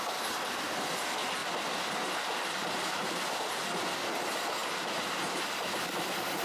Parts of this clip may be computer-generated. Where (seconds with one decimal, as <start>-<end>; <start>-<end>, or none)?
none